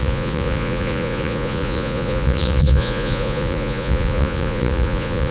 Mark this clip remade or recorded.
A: remade